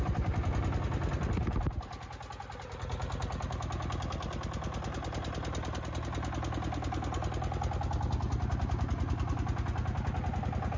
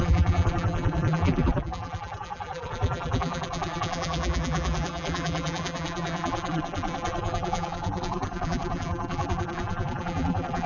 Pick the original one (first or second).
first